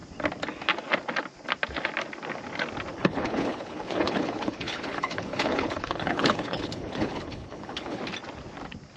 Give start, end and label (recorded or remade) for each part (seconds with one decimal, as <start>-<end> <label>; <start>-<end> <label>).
0.0-2.9 recorded; 2.9-8.0 remade; 8.0-9.0 recorded

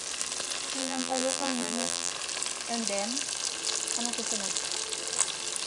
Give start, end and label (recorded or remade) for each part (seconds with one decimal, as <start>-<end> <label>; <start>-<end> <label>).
0.0-0.8 recorded; 0.8-2.1 remade; 2.1-5.7 recorded

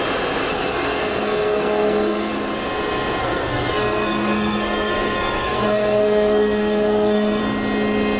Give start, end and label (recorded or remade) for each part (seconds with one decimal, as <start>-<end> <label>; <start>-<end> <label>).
0.0-0.5 recorded; 0.5-2.3 remade; 2.3-3.2 recorded; 3.2-7.4 remade; 7.4-8.2 recorded

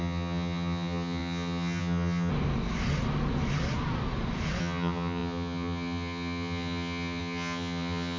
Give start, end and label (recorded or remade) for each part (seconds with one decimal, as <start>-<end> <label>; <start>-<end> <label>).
0.0-2.3 remade; 2.3-4.6 recorded; 4.6-8.2 remade

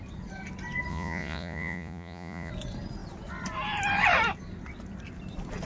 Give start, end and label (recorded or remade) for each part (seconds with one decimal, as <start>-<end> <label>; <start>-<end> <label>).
0.0-0.9 recorded; 0.9-2.5 remade; 2.5-5.7 recorded

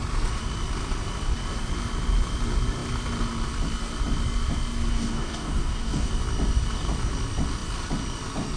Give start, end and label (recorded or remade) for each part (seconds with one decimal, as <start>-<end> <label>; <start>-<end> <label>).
0.0-4.9 recorded; 4.9-6.1 remade; 6.1-8.6 recorded

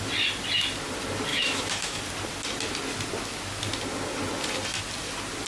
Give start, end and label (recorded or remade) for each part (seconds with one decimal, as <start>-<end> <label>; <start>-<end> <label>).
0.0-1.3 recorded; 1.3-2.0 remade; 2.0-5.5 recorded

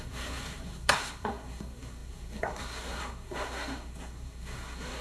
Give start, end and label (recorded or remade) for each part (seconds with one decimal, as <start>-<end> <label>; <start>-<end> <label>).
0.0-5.0 remade